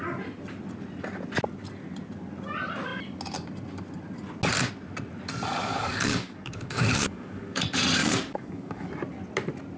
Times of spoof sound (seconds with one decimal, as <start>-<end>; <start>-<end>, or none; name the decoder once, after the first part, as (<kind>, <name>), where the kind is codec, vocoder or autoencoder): 5.6-7.6 (codec, DAC); 8.0-8.9